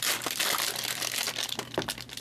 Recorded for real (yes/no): yes